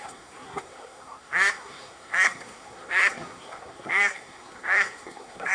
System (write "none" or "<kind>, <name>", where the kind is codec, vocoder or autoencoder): codec, SNAC